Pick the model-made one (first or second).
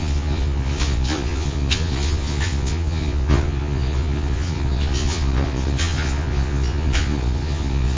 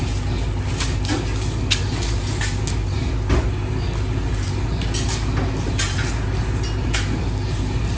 first